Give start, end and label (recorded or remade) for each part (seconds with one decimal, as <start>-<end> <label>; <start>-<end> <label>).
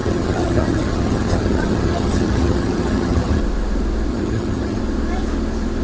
0.0-3.4 remade; 3.4-4.1 recorded; 4.1-4.8 remade; 4.8-5.8 recorded